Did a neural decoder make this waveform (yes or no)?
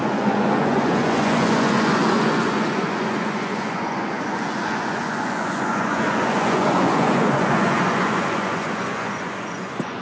yes